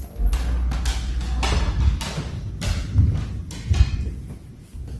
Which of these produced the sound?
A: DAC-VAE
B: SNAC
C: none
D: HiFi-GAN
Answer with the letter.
C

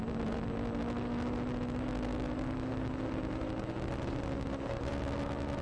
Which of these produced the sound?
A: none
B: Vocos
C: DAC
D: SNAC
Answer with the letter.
A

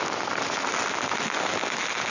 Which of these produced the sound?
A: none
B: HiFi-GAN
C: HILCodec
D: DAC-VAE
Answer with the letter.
A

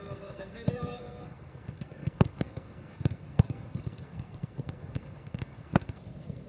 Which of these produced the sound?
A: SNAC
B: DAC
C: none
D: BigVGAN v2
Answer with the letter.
A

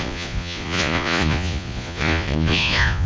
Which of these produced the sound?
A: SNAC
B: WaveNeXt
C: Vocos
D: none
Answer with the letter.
C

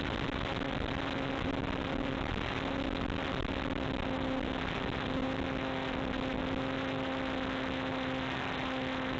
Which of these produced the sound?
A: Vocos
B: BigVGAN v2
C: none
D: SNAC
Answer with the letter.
C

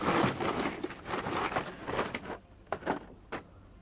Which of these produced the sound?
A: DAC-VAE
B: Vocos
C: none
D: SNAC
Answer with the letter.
C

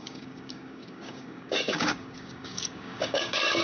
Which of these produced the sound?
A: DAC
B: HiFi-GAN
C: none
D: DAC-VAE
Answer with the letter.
A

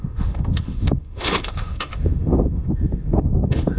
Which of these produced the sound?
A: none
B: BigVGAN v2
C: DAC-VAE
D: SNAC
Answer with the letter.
C